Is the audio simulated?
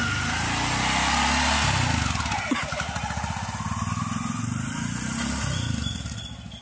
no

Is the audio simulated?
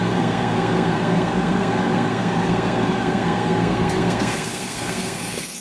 yes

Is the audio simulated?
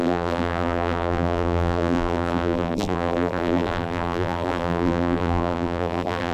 yes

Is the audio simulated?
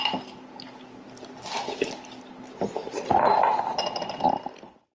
no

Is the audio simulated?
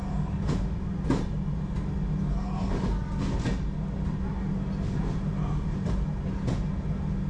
no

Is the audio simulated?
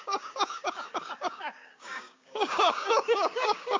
yes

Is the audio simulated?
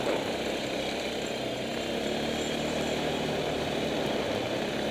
yes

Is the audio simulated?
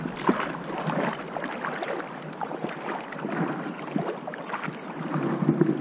no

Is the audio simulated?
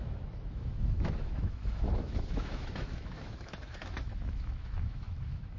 yes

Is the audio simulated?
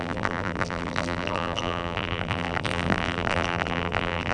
yes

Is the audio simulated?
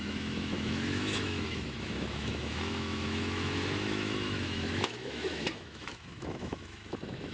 yes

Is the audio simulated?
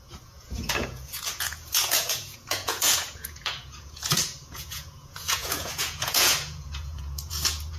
yes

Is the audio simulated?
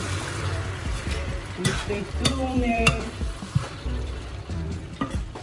yes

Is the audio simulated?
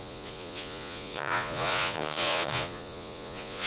yes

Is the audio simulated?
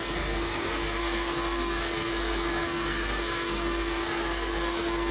yes